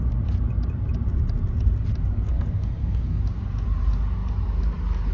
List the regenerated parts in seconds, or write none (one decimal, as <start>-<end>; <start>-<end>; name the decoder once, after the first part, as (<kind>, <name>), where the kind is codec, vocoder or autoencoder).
2.1-3.2 (codec, SNAC)